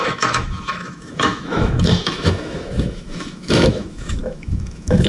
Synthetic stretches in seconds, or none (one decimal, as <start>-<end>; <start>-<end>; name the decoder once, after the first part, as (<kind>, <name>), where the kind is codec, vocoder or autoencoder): 0.0-5.1 (autoencoder, DAC-VAE)